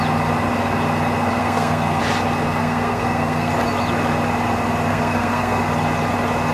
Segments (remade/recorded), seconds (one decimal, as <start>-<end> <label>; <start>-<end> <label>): 0.0-1.4 recorded; 1.4-2.0 remade; 2.0-2.6 recorded; 2.6-3.5 remade; 3.5-4.9 recorded; 4.9-5.6 remade; 5.6-6.5 recorded